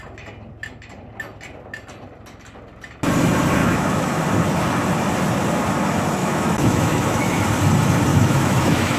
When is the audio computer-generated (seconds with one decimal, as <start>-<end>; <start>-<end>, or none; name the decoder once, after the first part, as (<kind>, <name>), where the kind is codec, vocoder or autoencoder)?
3.6-4.2 (autoencoder, DAC-VAE); 6.2-7.5; 8.1-9.0